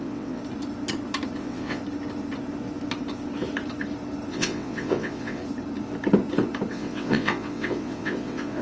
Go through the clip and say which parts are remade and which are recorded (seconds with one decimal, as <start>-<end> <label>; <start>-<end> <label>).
0.0-0.4 remade; 0.4-1.4 recorded; 1.4-1.8 remade; 1.8-4.3 recorded; 4.3-5.4 remade; 5.4-6.7 recorded; 6.7-8.6 remade